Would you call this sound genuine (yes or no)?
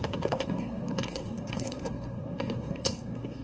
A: no